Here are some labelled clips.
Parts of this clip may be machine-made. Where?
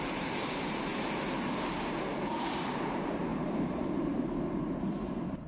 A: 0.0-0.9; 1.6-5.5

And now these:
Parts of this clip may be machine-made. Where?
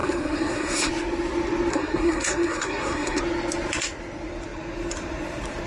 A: 0.0-0.9; 1.7-3.2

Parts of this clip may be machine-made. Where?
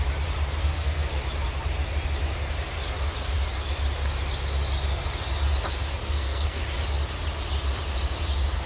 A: 0.6-1.1; 6.0-6.6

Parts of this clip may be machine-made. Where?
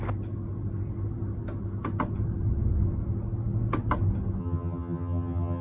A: 4.4-5.6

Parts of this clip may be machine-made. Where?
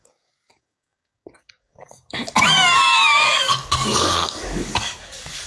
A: 0.0-5.5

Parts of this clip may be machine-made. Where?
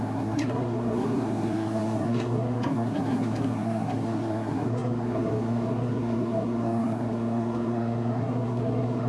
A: 0.0-9.1